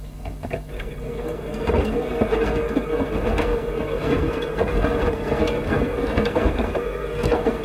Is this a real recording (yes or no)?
no